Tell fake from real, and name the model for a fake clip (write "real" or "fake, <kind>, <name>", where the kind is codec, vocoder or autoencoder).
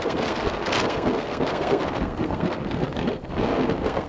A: fake, codec, SNAC